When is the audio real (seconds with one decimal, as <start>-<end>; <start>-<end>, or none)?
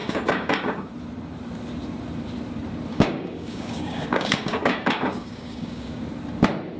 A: 0.9-2.9; 6.0-6.8